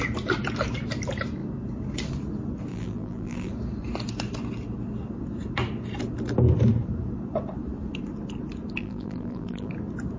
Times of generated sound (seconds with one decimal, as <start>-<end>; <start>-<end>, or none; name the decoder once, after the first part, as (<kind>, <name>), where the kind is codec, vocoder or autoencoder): 2.7-3.5 (vocoder, BigVGAN v2); 8.8-9.7